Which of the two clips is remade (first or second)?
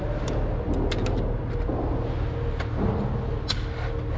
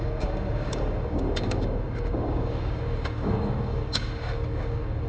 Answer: second